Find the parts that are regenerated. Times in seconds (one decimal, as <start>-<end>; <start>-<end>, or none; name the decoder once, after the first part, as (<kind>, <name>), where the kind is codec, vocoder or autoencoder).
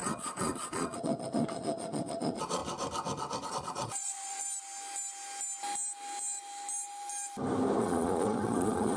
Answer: 0.0-2.6 (vocoder, Vocos); 3.5-4.4; 7.8-9.0